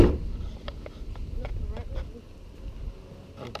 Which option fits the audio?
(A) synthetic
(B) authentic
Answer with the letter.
B